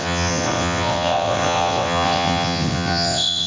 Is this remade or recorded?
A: remade